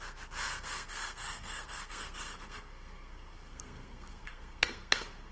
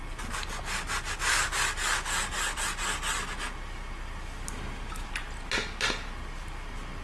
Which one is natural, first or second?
second